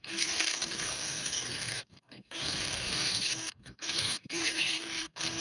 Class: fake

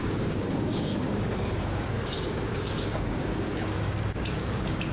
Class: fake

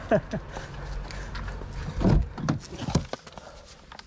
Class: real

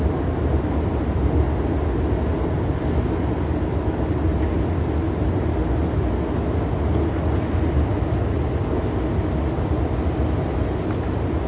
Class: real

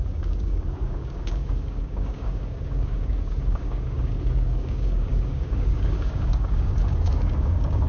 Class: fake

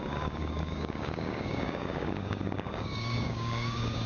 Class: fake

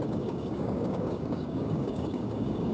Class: fake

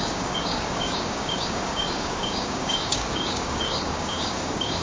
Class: fake